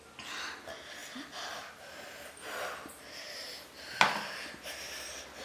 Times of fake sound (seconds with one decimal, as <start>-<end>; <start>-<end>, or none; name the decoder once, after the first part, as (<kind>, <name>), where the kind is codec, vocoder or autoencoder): none